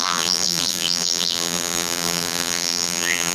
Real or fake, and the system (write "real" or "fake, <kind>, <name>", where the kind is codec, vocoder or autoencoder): fake, vocoder, BigVGAN v2